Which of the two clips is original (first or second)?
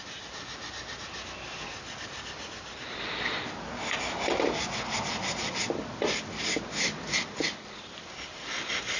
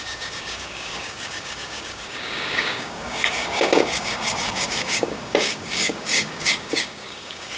first